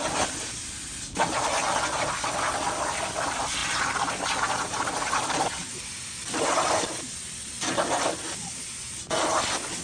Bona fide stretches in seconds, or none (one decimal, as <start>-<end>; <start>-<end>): 0.0-9.8